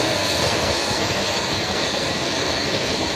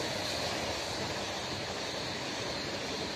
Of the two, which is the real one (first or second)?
second